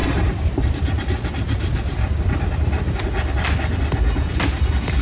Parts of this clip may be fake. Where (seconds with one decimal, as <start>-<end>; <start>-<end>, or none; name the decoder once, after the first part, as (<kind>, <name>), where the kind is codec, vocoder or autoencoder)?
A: 0.0-3.0 (vocoder, BigVGAN v2)